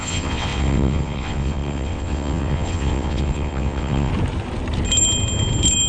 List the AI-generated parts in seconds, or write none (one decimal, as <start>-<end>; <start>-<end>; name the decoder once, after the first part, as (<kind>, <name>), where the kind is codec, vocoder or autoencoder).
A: 0.0-4.1 (vocoder, WaveNeXt)

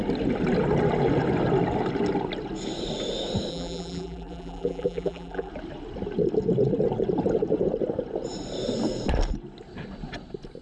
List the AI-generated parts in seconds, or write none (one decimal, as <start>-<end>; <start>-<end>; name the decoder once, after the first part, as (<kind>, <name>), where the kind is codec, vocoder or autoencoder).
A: 3.5-5.5 (vocoder, BigVGAN v2)